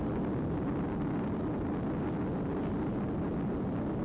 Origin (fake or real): real